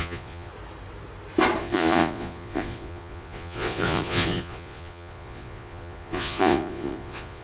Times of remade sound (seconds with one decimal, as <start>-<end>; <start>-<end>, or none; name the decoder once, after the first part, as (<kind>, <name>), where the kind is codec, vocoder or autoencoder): 0.0-0.5 (vocoder, Vocos); 1.6-7.4